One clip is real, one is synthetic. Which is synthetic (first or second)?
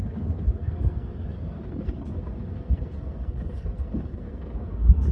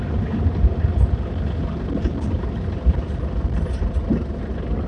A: first